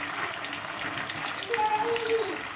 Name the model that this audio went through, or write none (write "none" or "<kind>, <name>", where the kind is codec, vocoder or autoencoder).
none